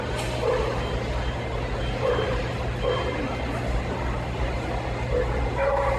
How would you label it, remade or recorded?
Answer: recorded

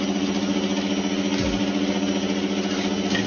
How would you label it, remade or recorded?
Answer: recorded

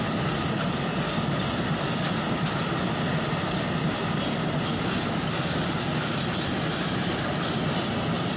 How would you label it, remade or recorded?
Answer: recorded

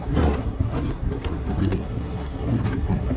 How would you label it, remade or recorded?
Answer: remade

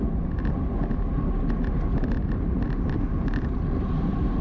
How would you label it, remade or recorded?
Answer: recorded